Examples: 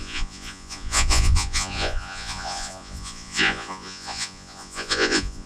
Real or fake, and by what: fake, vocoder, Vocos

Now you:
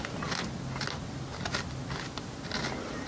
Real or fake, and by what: real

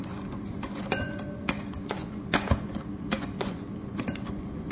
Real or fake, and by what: fake, vocoder, Vocos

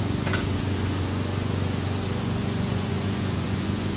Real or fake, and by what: fake, vocoder, Vocos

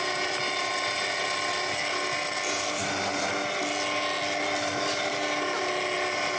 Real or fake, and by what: real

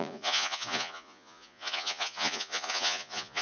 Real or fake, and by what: fake, vocoder, Vocos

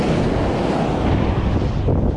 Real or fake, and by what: real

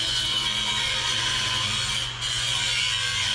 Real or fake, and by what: fake, vocoder, Vocos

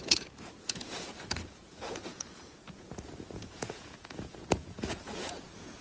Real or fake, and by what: fake, vocoder, Vocos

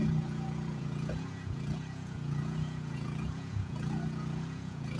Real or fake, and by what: fake, vocoder, Vocos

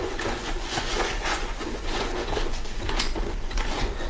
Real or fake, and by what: fake, vocoder, Vocos